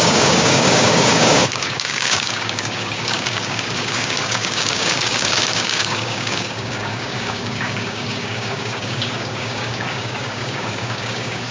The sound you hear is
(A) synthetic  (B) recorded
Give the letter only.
A